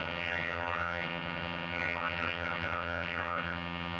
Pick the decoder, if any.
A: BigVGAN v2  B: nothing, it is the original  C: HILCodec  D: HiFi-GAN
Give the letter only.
D